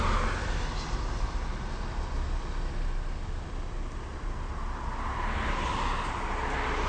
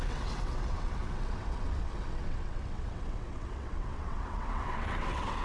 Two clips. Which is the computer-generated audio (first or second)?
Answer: second